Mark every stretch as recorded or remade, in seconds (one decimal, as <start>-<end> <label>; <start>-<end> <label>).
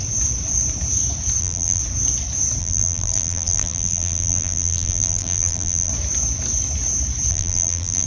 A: 0.0-1.4 recorded; 1.4-1.8 remade; 1.8-2.6 recorded; 2.6-5.9 remade; 5.9-7.3 recorded; 7.3-8.1 remade